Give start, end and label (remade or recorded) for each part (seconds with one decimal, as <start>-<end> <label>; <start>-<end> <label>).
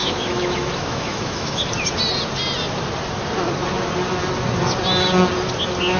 0.0-1.6 remade; 1.6-6.0 recorded